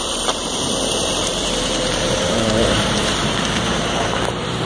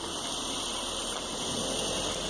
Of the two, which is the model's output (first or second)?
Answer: first